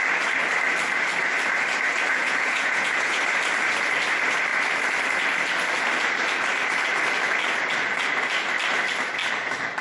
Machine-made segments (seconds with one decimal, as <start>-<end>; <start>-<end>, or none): 2.1-3.2